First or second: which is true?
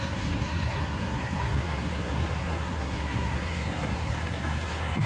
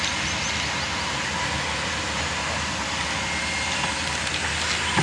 second